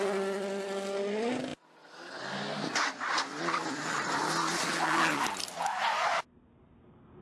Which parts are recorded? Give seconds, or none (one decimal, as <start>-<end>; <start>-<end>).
0.0-7.2